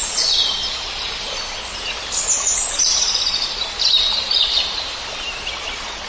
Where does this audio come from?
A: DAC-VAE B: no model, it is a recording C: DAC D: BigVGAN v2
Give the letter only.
B